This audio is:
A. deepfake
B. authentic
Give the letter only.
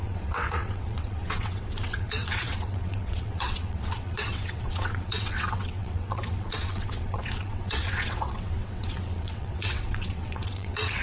A